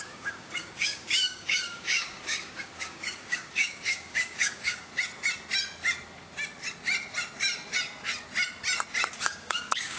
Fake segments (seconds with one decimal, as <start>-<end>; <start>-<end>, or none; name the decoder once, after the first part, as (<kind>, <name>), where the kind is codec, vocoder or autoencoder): 0.0-4.9 (codec, DAC); 9.2-10.0